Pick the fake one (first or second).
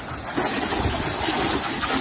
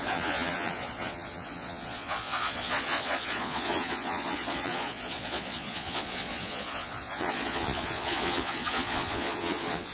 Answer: second